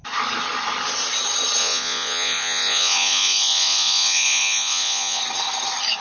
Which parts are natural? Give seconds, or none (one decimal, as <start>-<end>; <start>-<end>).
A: 0.0-1.6; 5.2-6.0